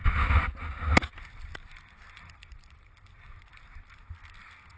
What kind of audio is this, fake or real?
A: real